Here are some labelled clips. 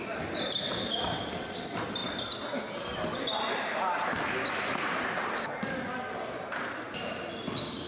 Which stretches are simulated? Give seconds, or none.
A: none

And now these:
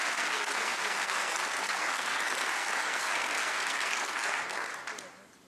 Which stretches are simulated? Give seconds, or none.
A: 0.0-4.7 (codec, SNAC)